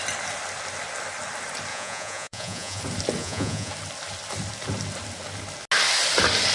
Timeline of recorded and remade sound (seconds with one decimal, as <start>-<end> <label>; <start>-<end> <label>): 0.0-1.7 recorded; 1.7-2.8 remade; 2.8-3.2 recorded; 3.2-3.7 remade; 3.7-6.5 recorded